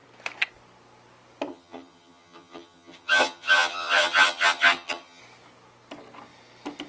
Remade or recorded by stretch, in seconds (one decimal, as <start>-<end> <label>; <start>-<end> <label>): 0.0-1.5 recorded; 1.5-5.2 remade; 5.2-6.9 recorded